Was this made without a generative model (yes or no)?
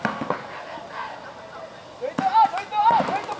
yes